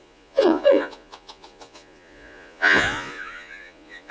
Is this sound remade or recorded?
remade